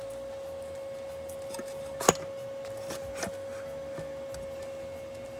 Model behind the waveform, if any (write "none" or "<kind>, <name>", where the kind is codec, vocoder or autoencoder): none